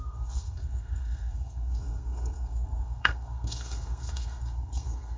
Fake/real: fake